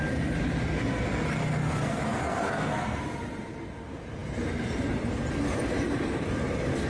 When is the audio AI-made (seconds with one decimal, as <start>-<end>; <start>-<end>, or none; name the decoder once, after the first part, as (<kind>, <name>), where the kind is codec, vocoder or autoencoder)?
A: 1.6-3.0 (codec, SNAC)